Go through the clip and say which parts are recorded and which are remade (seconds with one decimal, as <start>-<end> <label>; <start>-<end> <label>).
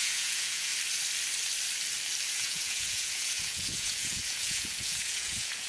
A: 0.0-0.7 remade; 0.7-2.3 recorded; 2.3-5.7 remade